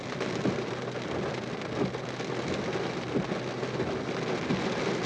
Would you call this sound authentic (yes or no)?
yes